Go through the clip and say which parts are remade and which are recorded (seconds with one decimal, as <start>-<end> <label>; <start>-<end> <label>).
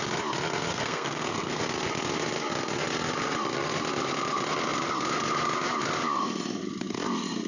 0.0-0.7 recorded; 0.7-1.6 remade; 1.6-7.5 recorded